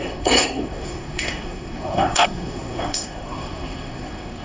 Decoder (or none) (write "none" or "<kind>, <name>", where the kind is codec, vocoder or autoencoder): codec, SNAC